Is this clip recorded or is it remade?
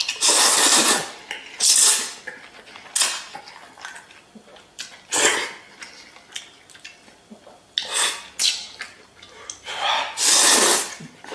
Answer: recorded